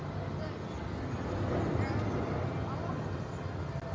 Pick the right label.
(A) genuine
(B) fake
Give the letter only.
A